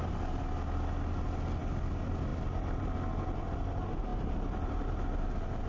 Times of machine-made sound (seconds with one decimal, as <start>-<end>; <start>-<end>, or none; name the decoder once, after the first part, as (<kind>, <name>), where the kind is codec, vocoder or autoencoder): none